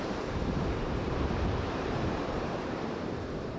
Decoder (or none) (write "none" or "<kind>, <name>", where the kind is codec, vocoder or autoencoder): vocoder, BigVGAN v2